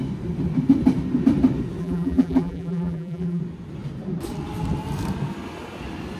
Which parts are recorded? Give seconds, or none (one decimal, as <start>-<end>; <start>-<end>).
0.0-1.8; 3.4-6.2